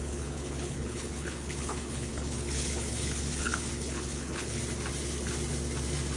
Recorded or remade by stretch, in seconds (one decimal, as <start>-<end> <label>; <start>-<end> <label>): 0.0-4.6 remade; 4.6-6.2 recorded